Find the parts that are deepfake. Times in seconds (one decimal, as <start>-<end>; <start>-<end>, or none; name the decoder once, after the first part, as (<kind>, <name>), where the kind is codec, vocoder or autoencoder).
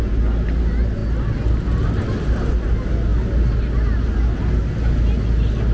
none